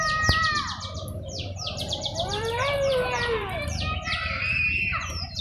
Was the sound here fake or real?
fake